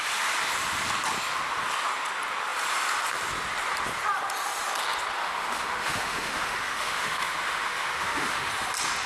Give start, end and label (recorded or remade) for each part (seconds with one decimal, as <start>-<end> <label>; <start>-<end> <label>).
0.0-5.2 recorded; 5.2-8.5 remade; 8.5-9.1 recorded